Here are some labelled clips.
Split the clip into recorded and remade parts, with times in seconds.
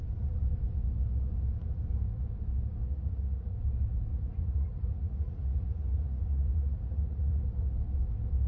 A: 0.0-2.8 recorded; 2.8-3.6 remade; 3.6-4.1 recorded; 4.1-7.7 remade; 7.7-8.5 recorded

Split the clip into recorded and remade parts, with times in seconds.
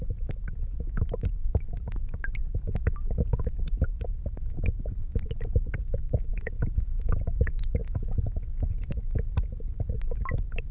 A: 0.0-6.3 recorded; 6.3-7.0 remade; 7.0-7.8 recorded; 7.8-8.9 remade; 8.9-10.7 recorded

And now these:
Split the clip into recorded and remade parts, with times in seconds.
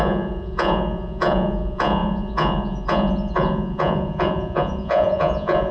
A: 0.0-5.7 remade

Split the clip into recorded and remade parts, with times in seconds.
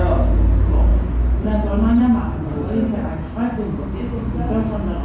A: 0.0-5.0 recorded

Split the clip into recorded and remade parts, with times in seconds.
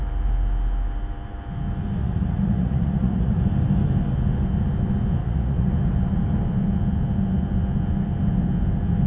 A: 0.0-2.0 recorded; 2.0-3.4 remade; 3.4-5.2 recorded; 5.2-5.7 remade; 5.7-9.1 recorded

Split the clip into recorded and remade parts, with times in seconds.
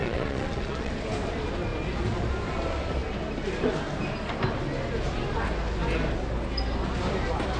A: 0.0-0.9 remade; 0.9-7.6 recorded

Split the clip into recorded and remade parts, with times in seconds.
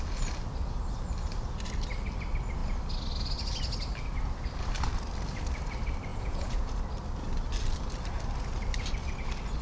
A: 0.0-6.1 recorded; 6.1-6.8 remade; 6.8-9.6 recorded